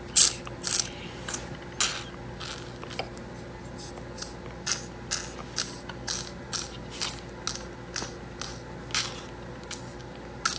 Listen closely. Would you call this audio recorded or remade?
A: recorded